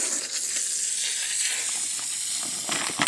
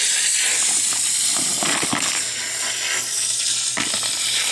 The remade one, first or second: second